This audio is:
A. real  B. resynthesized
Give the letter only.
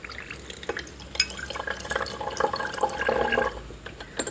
A